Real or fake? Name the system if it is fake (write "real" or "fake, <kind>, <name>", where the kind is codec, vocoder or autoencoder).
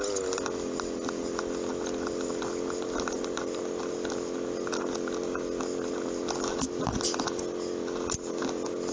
real